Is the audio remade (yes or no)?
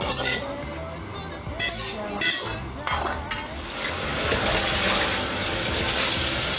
no